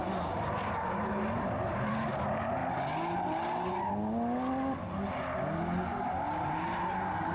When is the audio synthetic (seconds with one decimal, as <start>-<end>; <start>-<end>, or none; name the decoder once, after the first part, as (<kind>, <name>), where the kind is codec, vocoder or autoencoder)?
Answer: none